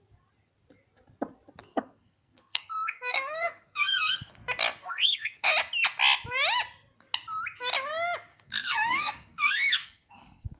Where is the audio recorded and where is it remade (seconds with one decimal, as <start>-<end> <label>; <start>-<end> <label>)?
0.0-1.7 recorded; 1.7-4.3 remade; 4.3-4.8 recorded; 4.8-5.5 remade; 5.5-8.3 recorded; 8.3-10.6 remade